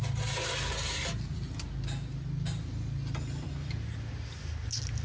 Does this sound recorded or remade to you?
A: recorded